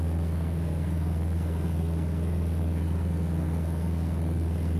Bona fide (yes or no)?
no